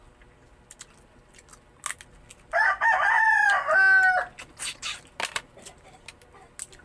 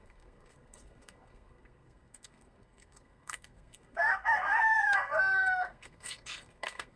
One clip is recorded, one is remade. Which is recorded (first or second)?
first